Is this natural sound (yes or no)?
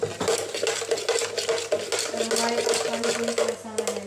yes